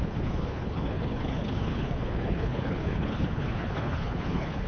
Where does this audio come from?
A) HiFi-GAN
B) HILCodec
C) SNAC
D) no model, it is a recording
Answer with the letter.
B